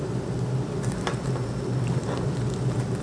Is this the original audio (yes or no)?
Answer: yes